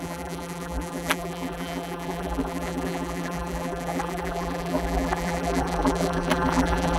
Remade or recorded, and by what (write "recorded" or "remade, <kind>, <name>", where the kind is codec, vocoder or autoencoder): remade, vocoder, BigVGAN v2